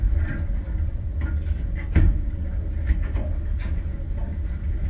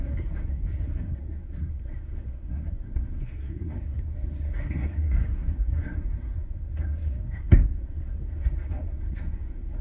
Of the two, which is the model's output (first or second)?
second